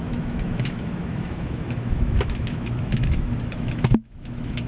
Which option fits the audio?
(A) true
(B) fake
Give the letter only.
B